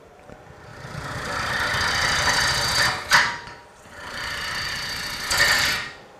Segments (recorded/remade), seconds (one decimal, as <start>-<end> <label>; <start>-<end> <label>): 0.0-0.7 recorded; 0.7-2.3 remade; 2.3-3.6 recorded; 3.6-4.2 remade; 4.2-6.2 recorded